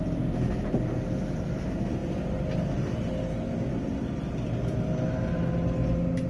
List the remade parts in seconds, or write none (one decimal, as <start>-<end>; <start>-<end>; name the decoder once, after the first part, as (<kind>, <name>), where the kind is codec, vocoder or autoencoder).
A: none